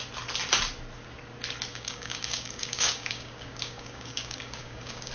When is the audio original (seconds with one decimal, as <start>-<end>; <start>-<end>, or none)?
0.0-1.7